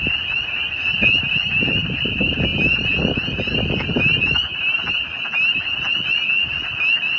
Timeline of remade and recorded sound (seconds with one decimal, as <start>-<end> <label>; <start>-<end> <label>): 0.0-7.2 recorded